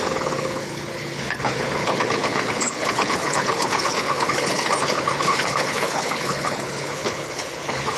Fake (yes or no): yes